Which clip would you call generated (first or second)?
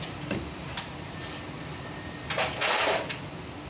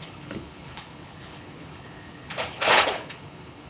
second